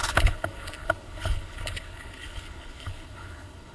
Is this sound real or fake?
fake